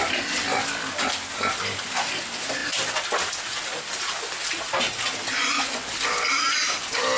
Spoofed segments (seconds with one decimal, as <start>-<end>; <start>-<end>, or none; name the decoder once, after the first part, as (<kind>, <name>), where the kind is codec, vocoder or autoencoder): 5.4-5.9 (vocoder, Vocos)